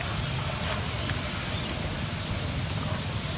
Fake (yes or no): no